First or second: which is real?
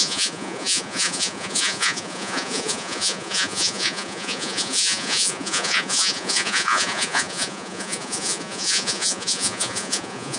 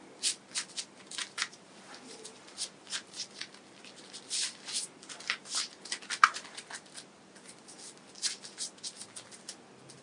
second